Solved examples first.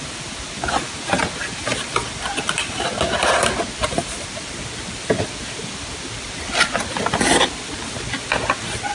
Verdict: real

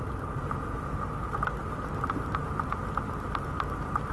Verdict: real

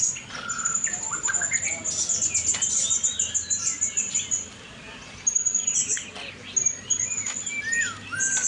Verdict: real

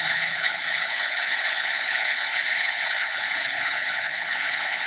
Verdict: fake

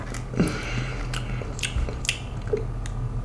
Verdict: real